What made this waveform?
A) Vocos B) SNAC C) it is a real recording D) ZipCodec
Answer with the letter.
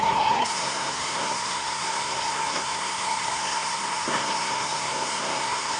B